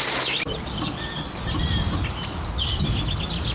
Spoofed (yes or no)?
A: no